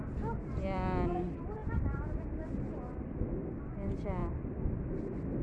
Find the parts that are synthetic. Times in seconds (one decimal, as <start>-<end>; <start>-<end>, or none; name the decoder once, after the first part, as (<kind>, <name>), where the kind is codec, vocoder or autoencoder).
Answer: none